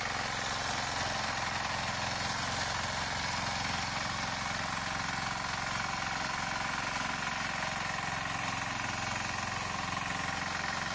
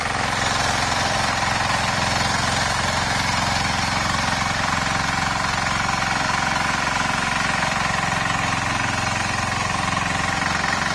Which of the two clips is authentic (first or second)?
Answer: first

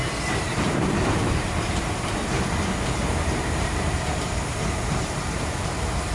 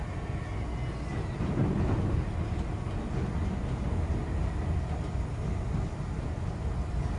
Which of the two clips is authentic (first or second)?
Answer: second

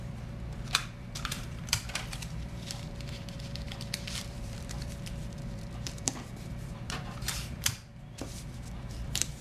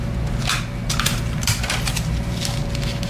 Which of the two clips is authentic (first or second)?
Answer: second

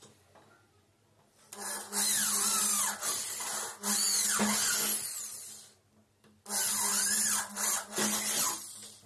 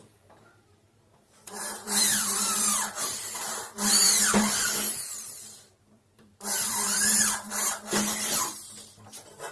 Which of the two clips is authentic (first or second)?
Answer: first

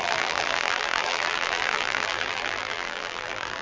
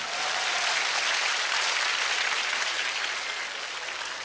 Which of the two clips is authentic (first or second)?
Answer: second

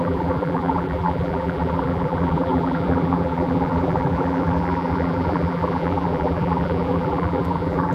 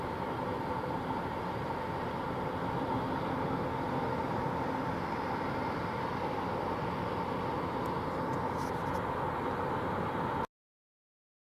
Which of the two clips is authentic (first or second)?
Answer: second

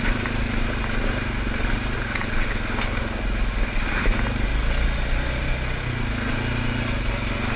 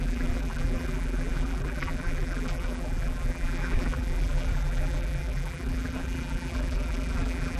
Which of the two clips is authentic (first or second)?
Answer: first